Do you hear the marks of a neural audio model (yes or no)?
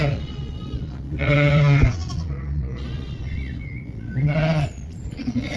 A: yes